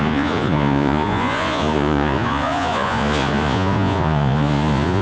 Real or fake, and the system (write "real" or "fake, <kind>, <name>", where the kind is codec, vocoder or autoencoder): fake, vocoder, Vocos